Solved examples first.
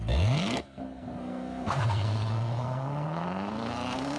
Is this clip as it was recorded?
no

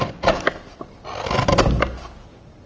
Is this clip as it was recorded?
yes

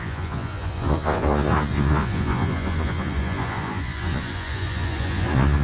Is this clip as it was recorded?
no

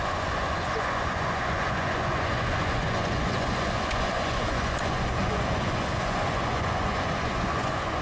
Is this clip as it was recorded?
no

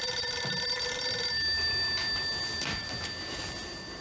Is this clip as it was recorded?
no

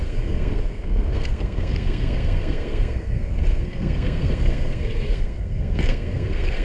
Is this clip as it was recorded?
no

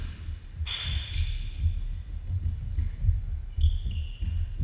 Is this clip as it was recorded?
yes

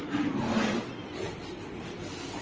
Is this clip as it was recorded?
yes